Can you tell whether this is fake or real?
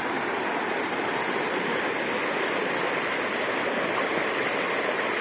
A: real